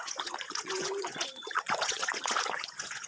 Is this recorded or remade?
remade